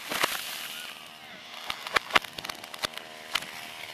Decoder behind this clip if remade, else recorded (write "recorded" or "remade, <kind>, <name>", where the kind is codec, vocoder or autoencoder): remade, vocoder, BigVGAN v2